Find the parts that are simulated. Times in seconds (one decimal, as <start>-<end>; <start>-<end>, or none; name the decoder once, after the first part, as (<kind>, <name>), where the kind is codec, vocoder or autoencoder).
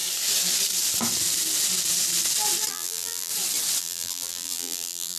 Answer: 2.7-3.3 (vocoder, BigVGAN v2); 3.8-5.2